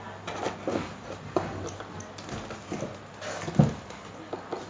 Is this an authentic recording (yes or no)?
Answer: yes